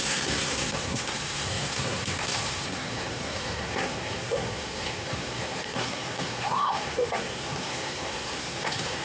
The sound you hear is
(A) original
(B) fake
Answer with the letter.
B